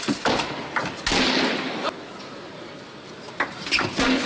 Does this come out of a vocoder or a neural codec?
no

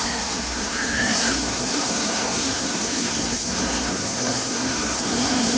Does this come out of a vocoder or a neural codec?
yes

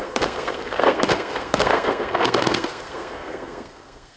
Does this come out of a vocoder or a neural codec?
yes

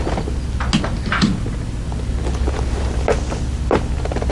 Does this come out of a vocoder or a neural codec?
no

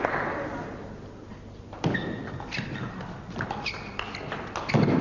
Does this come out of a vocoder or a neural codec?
no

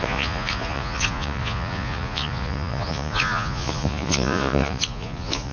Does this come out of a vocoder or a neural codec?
yes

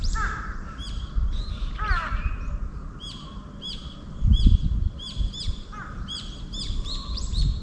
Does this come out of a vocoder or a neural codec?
yes